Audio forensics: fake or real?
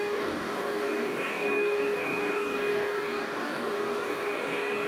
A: fake